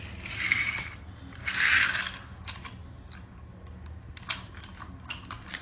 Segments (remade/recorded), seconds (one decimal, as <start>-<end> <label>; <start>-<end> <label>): 0.0-5.6 recorded